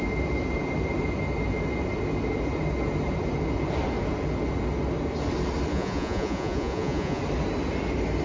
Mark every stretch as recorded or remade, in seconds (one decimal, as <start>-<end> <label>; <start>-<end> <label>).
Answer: 0.0-5.7 recorded; 5.7-7.2 remade; 7.2-8.2 recorded